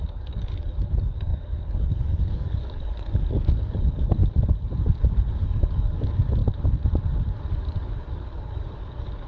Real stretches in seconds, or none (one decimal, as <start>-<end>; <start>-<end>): 4.2-5.1; 6.4-7.5